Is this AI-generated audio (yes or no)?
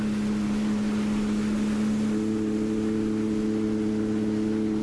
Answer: no